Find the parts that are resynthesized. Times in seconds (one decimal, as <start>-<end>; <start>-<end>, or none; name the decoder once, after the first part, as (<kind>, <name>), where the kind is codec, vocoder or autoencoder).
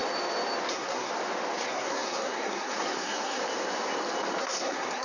0.7-1.1 (codec, SNAC); 1.6-3.4; 4.4-5.0